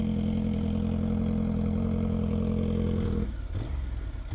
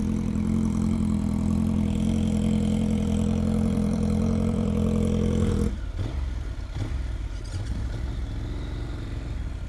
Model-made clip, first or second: second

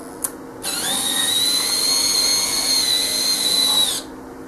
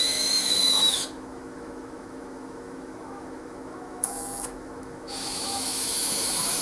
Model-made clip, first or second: second